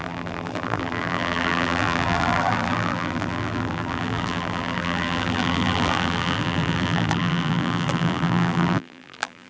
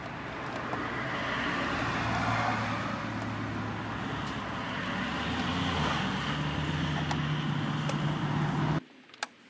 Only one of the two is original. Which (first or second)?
second